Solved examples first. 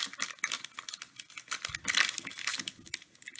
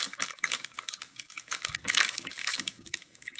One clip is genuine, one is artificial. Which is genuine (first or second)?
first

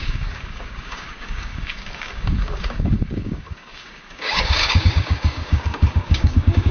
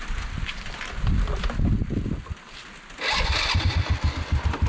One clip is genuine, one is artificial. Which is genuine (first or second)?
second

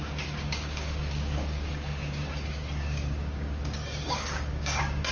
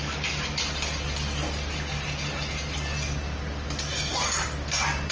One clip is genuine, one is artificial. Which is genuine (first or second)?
second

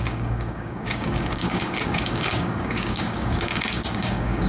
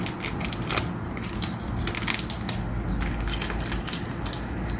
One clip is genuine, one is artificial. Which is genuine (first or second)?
second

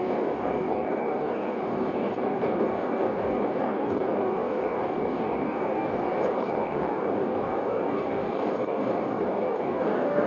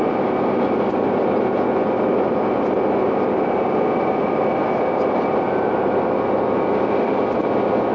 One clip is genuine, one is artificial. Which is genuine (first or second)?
second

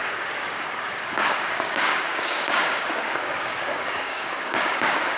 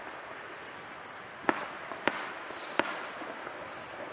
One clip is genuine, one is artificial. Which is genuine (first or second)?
second